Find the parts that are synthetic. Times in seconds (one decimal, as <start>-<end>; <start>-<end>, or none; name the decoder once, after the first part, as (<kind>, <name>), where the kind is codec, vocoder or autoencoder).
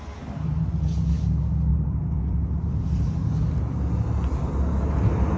1.7-3.3 (vocoder, BigVGAN v2)